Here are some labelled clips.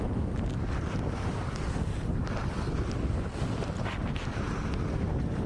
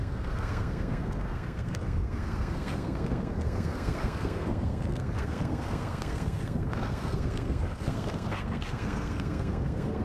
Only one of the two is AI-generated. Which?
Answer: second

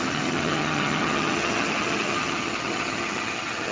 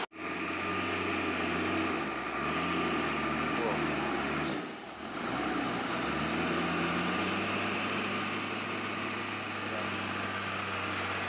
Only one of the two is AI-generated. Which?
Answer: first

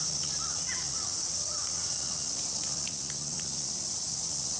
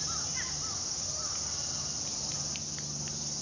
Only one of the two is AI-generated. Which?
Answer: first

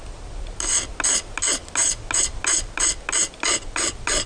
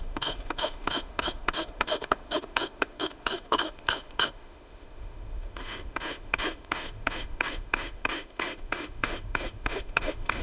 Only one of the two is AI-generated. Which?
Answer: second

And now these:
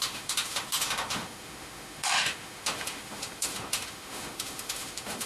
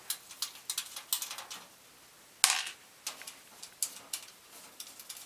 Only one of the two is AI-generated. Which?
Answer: first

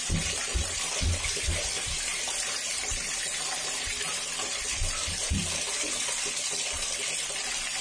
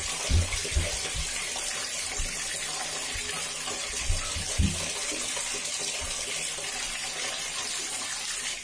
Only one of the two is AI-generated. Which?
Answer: first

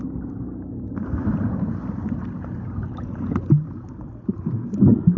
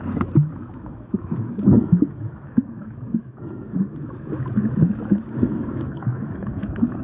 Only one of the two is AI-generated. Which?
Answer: second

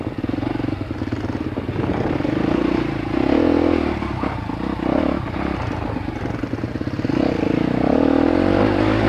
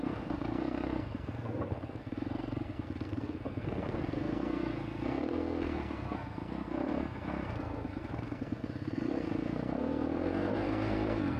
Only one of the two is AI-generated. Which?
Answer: second